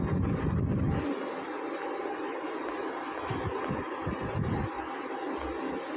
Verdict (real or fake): real